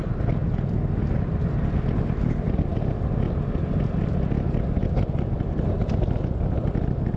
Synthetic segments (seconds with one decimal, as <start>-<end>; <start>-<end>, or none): none